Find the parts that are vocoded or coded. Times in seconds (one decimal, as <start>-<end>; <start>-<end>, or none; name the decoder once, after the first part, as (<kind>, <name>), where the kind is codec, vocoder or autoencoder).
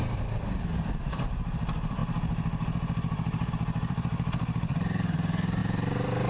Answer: 0.0-6.3 (vocoder, BigVGAN v2)